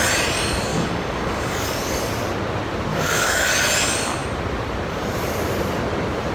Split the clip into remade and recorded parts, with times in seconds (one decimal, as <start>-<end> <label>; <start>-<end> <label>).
0.0-0.7 recorded; 0.7-2.1 remade; 2.1-2.9 recorded; 2.9-3.4 remade; 3.4-6.3 recorded